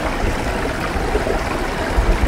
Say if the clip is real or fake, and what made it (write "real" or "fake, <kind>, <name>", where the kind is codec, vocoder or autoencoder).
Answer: real